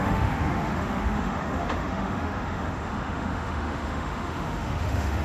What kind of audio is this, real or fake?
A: fake